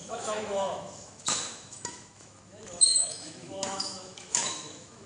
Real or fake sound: fake